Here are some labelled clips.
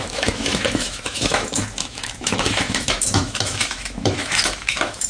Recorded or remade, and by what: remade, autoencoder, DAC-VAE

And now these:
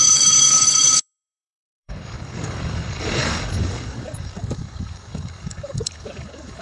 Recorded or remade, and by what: remade, codec, DAC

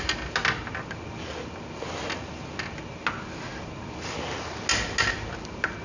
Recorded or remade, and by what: recorded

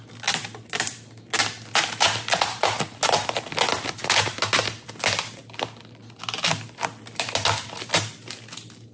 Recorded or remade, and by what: recorded